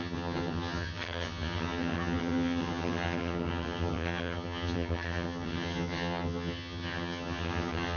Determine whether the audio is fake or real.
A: fake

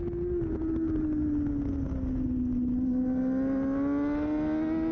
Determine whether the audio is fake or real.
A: real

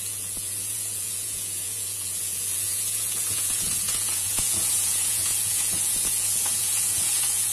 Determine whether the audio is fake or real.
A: fake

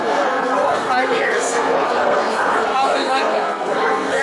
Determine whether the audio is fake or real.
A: fake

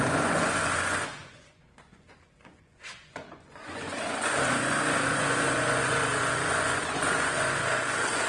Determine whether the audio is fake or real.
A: fake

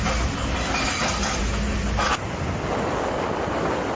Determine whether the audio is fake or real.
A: real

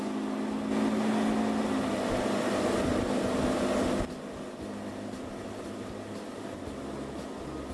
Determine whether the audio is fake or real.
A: real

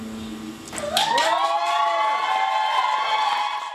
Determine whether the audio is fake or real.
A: real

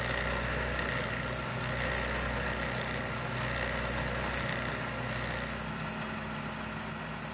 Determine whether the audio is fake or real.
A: real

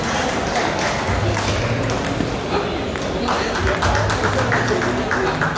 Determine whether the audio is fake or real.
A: real